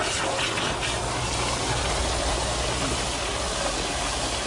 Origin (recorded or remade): recorded